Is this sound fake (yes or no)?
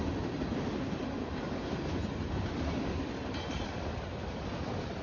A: no